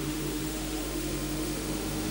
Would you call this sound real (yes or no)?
no